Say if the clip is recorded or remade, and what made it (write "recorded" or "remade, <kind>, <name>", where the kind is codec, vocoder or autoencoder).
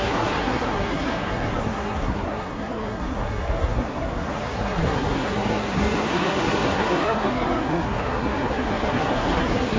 remade, codec, SNAC